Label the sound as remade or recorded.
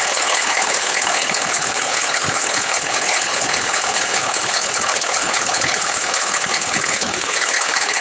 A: remade